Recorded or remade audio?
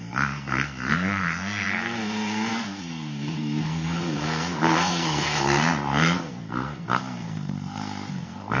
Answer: remade